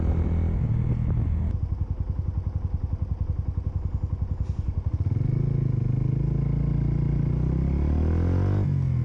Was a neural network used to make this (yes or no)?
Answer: no